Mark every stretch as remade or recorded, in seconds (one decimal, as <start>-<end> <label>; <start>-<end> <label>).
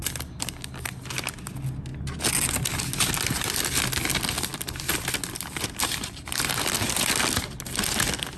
0.0-8.4 recorded